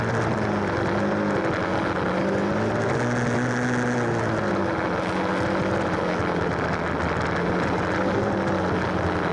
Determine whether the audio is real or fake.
real